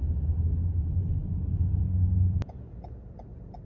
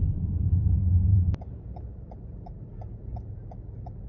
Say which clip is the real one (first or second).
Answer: first